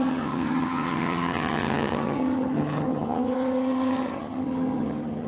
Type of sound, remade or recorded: remade